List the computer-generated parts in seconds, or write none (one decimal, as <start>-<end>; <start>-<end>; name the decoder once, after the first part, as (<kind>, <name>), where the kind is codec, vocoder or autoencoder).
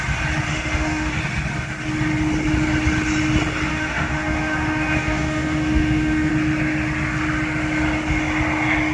0.5-1.2 (autoencoder, DAC-VAE); 3.7-6.3